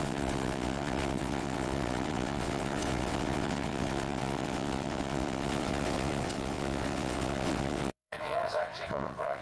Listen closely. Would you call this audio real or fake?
fake